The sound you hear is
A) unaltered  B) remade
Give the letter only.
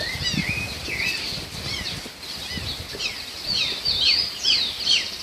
A